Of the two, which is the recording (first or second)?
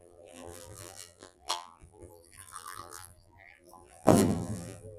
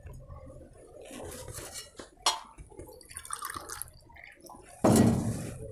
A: second